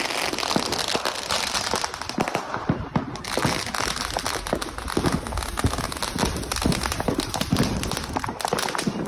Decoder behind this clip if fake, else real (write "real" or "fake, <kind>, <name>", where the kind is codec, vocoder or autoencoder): real